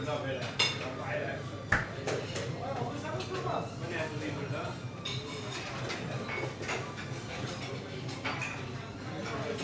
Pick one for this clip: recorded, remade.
recorded